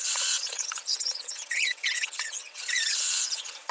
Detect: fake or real fake